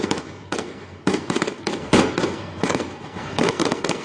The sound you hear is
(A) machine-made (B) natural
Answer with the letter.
A